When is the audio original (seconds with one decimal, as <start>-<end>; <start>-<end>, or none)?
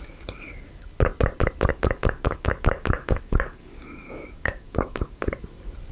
0.0-1.7; 5.2-5.9